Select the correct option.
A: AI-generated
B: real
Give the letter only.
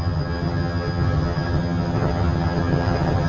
A